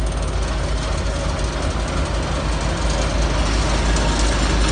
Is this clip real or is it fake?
real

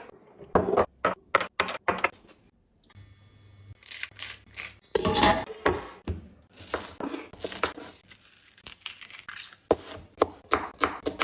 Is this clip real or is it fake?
real